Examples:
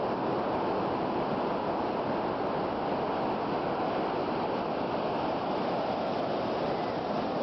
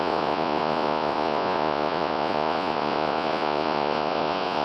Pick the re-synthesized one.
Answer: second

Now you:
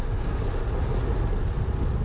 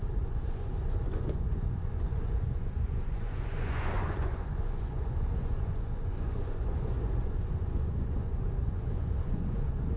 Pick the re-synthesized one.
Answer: second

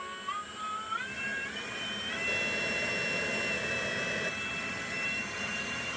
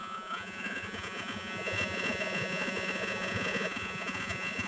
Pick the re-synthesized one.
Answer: second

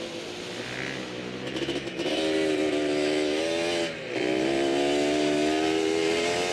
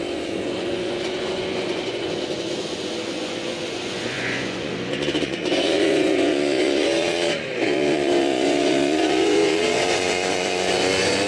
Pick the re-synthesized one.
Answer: second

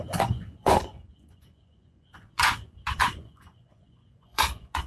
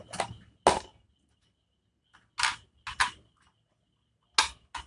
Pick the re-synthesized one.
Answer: first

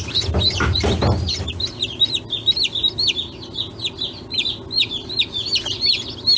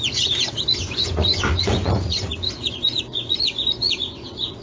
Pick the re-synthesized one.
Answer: second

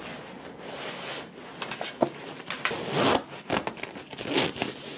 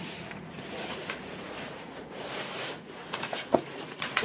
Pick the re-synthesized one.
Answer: second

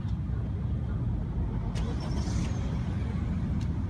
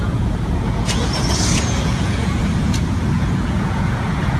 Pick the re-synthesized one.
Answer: second